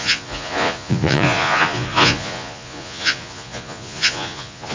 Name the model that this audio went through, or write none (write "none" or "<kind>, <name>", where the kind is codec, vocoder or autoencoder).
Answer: vocoder, Vocos